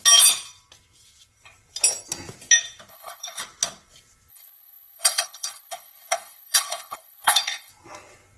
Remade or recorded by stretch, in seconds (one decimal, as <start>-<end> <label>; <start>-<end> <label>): 0.0-2.9 recorded; 2.9-3.4 remade; 3.4-4.3 recorded; 4.3-7.7 remade; 7.7-8.4 recorded